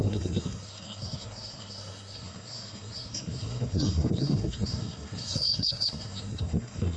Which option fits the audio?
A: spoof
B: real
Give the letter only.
A